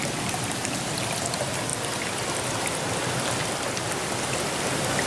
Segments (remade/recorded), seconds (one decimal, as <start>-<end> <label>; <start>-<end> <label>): 0.0-5.1 recorded